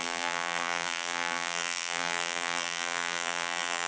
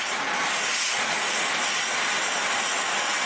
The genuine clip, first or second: second